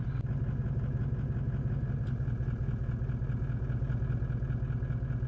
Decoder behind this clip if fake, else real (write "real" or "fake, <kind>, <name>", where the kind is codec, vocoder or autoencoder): real